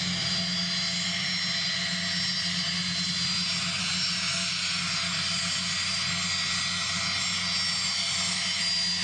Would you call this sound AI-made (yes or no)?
no